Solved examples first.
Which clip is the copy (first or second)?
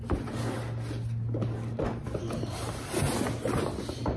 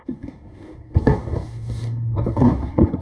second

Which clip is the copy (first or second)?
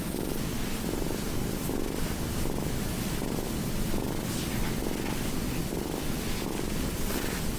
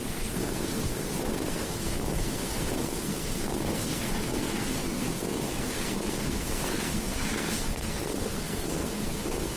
second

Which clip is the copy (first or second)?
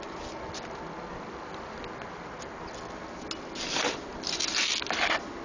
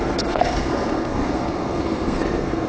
second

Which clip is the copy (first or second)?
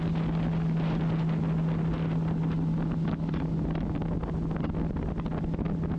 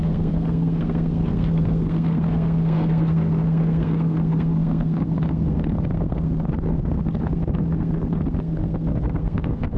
second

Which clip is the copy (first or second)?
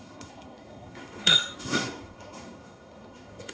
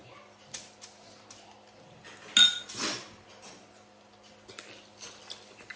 first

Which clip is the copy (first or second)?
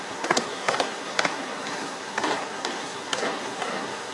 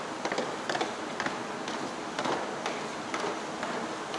first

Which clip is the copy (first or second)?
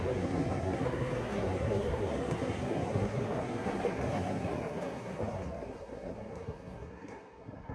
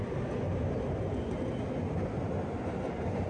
first